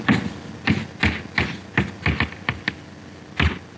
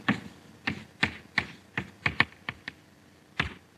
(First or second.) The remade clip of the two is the second